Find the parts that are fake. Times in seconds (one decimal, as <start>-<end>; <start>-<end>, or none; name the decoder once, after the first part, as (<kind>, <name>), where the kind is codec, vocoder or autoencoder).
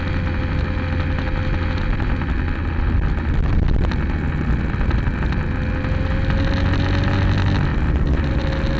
none